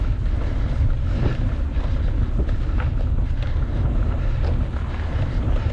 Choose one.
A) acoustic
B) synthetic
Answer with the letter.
A